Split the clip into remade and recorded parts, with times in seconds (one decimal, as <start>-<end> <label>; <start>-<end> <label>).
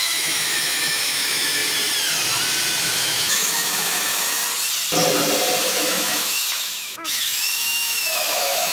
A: 0.0-1.6 remade; 1.6-2.8 recorded; 2.8-4.4 remade; 4.4-5.6 recorded; 5.6-8.7 remade